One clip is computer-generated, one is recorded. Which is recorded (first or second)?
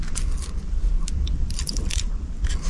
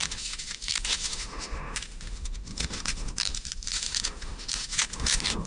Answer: first